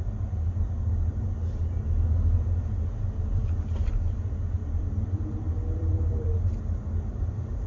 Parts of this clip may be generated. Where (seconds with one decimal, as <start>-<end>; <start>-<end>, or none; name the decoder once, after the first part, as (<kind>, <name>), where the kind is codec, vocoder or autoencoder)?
4.6-6.5 (vocoder, BigVGAN v2)